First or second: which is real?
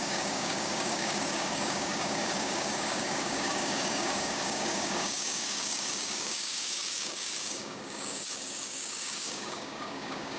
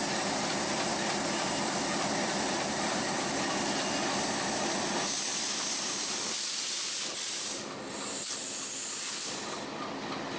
second